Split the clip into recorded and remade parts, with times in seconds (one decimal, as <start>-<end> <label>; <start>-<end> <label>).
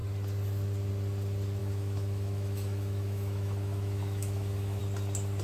0.0-1.6 recorded; 1.6-4.8 remade; 4.8-5.4 recorded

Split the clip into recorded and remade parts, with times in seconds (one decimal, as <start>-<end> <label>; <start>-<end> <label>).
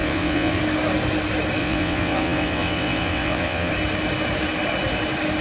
0.0-0.6 remade; 0.6-1.6 recorded; 1.6-3.7 remade; 3.7-5.4 recorded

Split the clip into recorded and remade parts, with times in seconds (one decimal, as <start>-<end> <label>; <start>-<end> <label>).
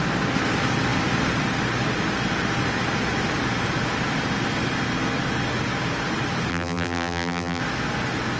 0.0-6.5 recorded; 6.5-7.6 remade; 7.6-8.4 recorded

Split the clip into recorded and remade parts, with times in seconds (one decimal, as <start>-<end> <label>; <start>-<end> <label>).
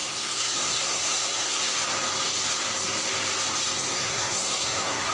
0.0-1.6 remade; 1.6-3.9 recorded; 3.9-5.1 remade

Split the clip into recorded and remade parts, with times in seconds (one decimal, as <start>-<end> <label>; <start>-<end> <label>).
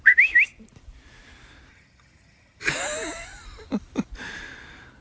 0.0-1.7 recorded; 1.7-2.7 remade; 2.7-5.0 recorded